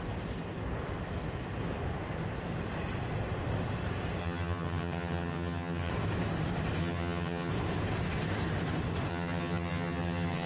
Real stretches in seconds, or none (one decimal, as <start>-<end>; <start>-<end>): 0.0-4.2; 5.9-6.8; 7.5-9.1

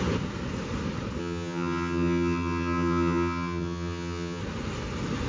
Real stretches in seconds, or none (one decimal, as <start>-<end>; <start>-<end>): 0.0-1.2; 4.4-5.3

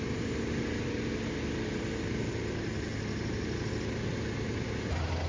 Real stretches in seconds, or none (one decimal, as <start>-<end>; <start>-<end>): 0.0-5.3

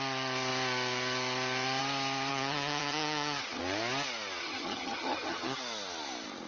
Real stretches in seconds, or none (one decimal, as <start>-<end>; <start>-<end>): 0.0-2.3; 3.6-4.4; 5.6-6.5